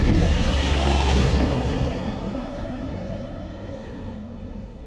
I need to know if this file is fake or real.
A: fake